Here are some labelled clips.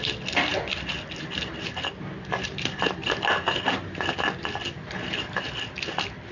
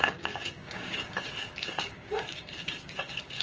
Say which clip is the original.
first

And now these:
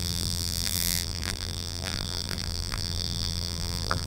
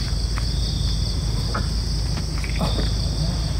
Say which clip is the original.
second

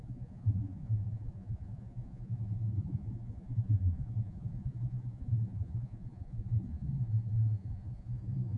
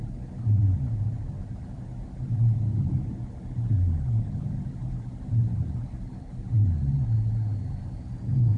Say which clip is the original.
second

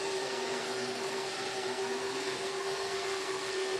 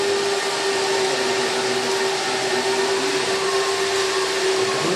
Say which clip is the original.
second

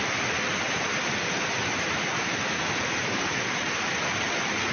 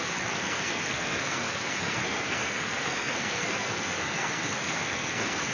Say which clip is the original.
first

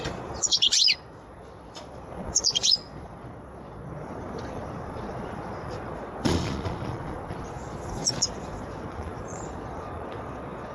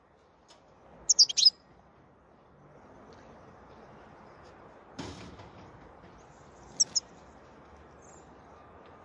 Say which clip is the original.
second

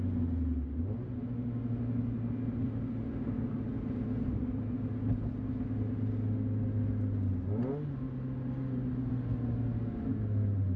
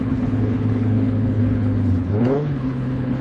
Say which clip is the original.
first